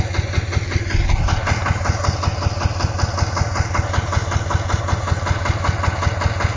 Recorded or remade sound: recorded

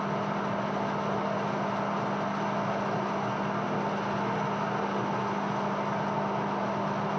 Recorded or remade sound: recorded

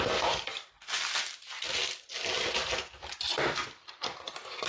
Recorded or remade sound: recorded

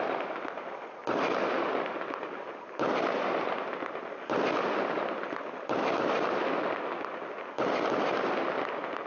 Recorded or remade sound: recorded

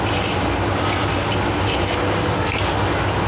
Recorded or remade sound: recorded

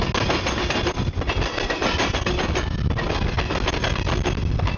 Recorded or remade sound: recorded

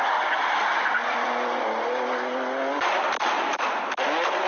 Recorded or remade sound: recorded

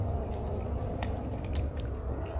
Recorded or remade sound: recorded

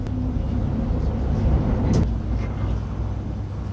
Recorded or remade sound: recorded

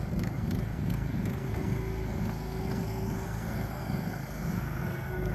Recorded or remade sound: remade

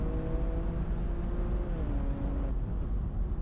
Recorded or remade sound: recorded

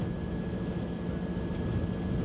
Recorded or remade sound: recorded